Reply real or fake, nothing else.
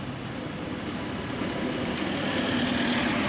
real